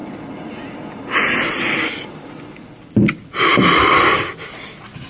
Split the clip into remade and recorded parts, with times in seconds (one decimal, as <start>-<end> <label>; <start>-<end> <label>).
0.0-3.5 recorded; 3.5-4.3 remade; 4.3-5.1 recorded